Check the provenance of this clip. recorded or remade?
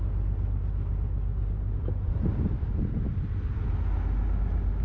recorded